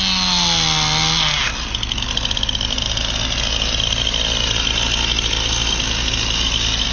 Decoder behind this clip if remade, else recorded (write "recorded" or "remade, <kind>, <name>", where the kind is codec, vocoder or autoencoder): recorded